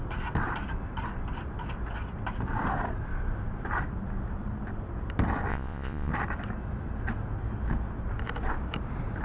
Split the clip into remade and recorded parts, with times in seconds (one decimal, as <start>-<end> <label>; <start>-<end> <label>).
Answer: 0.0-5.5 recorded; 5.5-6.1 remade; 6.1-9.2 recorded